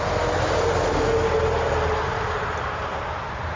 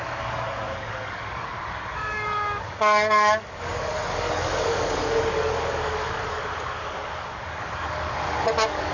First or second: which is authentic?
first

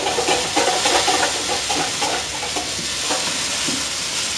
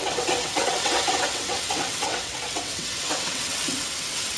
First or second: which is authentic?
first